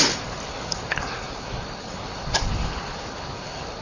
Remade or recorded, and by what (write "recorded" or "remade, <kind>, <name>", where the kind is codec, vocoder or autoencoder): remade, codec, HILCodec